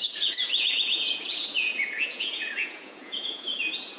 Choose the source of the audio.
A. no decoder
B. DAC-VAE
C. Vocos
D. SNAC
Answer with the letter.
C